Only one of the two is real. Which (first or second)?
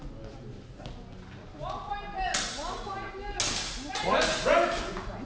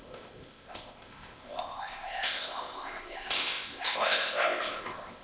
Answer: first